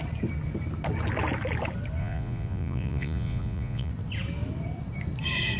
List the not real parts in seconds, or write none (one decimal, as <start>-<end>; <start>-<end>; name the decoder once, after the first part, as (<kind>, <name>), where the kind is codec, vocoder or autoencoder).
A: 2.0-3.9 (vocoder, Vocos)